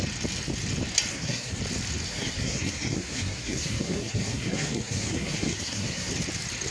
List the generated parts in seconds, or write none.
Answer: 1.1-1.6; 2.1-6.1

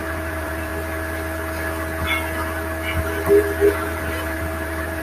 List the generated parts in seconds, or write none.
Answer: 0.0-0.7; 3.7-5.0

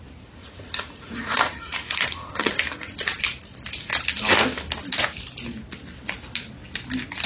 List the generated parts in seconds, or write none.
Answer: 0.4-3.2

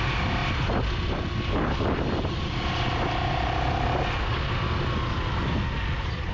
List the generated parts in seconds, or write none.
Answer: none

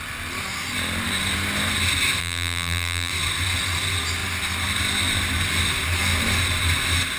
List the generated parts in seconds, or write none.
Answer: 2.2-3.1

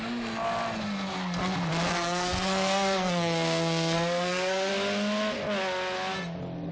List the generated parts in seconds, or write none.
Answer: 1.9-4.7

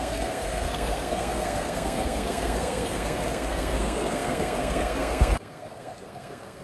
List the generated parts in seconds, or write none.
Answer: 0.0-6.6